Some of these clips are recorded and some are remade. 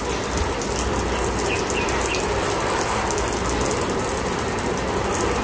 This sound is recorded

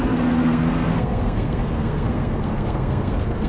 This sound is remade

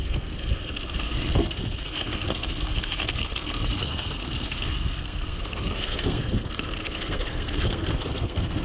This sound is remade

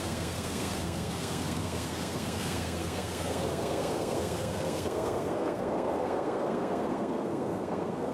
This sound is remade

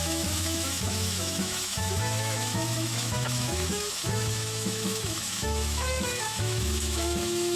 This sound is remade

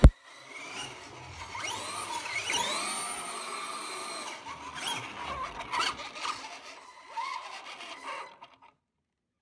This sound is recorded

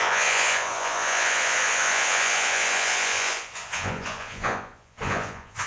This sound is remade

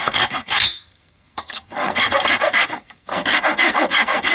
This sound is remade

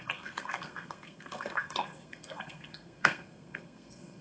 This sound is remade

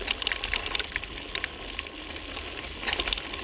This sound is recorded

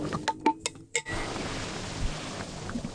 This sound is recorded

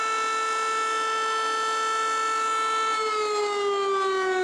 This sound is recorded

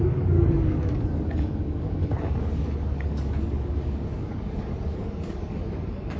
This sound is remade